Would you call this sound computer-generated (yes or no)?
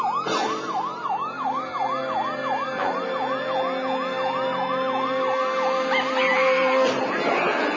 no